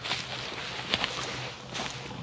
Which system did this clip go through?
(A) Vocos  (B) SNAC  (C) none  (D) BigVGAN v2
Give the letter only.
C